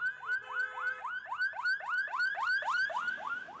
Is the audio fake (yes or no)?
no